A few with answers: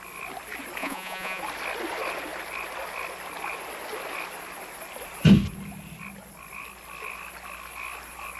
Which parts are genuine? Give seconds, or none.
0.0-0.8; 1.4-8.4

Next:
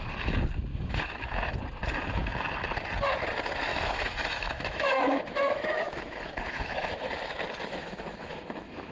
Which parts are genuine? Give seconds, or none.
0.0-0.7; 1.4-3.7; 7.1-7.8

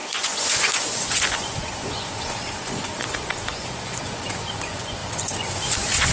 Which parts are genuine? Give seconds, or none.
none

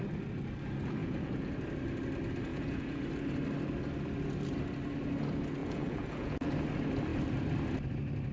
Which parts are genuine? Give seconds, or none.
0.0-1.0; 1.5-2.5; 3.0-5.6; 6.5-8.3

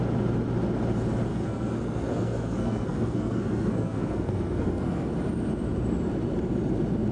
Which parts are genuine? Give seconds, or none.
0.0-1.3; 5.1-7.1